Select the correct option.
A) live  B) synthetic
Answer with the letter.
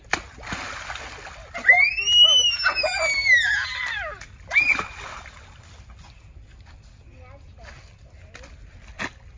A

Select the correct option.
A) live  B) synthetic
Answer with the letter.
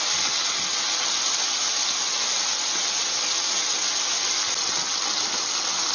A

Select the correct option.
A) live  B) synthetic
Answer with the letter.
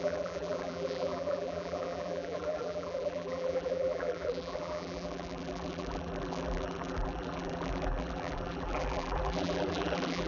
B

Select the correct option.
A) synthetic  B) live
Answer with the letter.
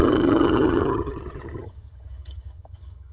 A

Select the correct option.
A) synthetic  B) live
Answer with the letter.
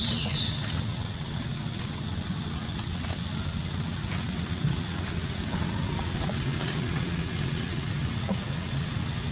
A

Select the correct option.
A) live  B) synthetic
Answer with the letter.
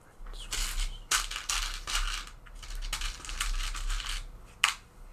A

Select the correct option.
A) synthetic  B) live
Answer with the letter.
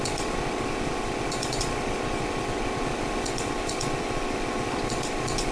A